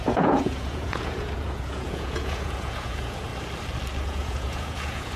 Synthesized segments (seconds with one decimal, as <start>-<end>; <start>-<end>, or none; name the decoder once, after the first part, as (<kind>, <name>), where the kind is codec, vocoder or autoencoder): 0.0-3.3 (vocoder, Vocos); 4.0-5.2

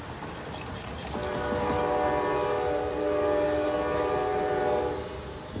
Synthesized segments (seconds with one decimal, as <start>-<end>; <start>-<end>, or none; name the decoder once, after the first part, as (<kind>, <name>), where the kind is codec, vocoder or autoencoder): none

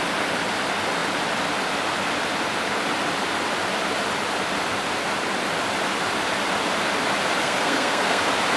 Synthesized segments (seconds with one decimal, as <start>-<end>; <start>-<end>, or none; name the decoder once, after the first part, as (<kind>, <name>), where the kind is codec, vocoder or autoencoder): 7.4-8.2 (codec, SNAC)

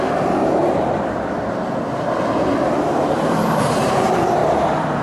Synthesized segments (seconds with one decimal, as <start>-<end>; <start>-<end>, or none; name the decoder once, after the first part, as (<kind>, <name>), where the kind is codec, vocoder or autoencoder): 0.0-0.4 (vocoder, BigVGAN v2); 2.8-4.4

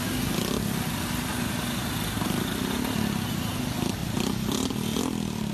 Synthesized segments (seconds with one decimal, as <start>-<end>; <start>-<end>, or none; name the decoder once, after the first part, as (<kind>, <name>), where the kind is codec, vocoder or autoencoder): 4.0-5.0 (vocoder, BigVGAN v2)

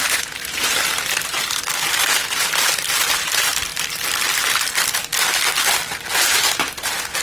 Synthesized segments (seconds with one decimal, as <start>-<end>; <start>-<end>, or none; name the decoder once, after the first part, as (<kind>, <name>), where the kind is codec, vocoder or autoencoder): 0.0-3.7 (vocoder, BigVGAN v2); 6.2-7.2

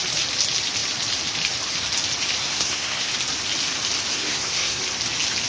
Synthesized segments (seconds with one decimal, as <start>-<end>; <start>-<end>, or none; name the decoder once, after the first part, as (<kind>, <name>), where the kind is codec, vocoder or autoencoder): 2.4-3.1 (codec, SNAC); 4.1-4.8